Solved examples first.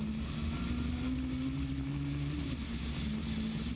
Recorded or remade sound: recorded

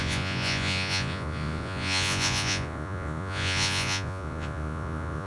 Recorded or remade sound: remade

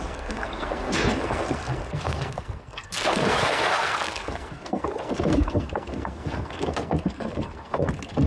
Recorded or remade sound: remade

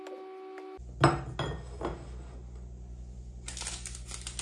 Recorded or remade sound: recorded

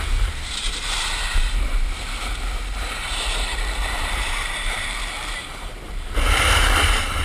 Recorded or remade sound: remade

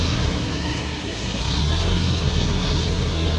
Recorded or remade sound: remade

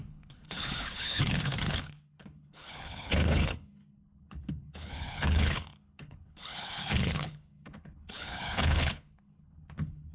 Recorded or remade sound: remade